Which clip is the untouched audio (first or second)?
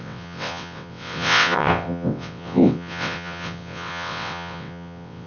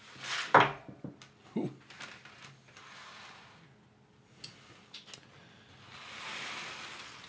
second